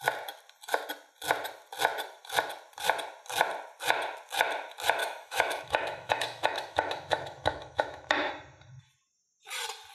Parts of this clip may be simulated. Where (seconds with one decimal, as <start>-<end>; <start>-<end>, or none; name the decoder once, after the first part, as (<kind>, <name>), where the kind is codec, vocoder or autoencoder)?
5.0-8.3 (autoencoder, DAC-VAE)